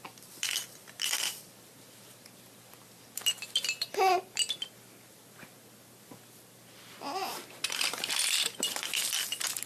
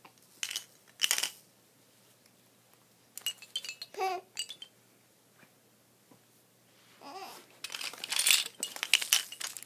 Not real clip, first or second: first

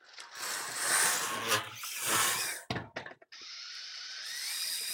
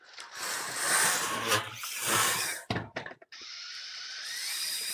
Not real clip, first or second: second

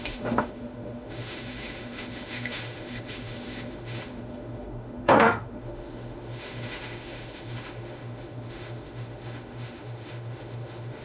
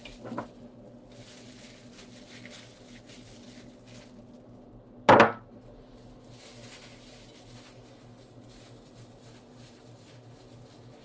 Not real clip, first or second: first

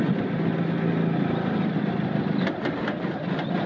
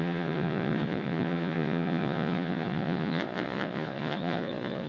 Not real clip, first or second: second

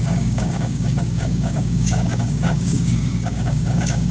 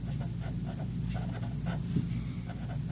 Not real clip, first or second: first